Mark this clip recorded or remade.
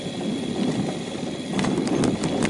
recorded